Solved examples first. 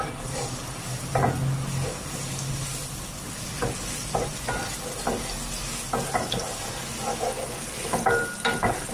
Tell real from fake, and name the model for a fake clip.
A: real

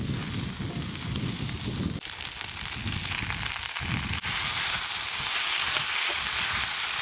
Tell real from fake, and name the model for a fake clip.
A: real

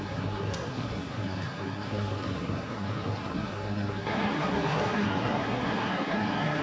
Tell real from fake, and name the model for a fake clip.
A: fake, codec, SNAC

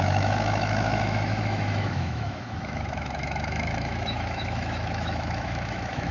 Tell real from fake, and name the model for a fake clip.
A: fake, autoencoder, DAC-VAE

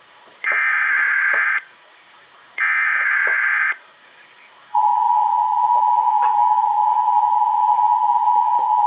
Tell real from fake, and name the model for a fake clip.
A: fake, vocoder, Vocos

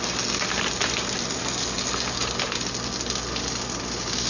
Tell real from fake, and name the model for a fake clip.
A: real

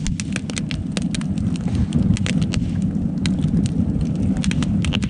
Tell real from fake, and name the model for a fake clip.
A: real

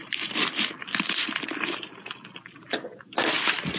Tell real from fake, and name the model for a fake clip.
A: real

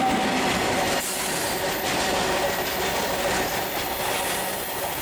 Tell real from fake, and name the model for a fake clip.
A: real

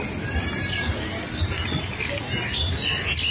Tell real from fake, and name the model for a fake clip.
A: real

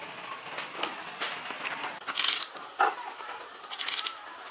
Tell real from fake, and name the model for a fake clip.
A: real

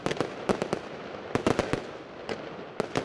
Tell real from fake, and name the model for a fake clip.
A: real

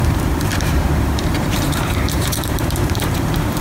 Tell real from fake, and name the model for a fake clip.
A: fake, vocoder, BigVGAN v2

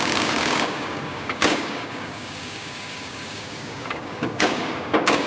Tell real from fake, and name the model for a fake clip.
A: fake, codec, DAC